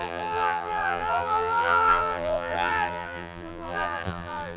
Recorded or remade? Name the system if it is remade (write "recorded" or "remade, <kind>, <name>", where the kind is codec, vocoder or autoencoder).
remade, vocoder, BigVGAN v2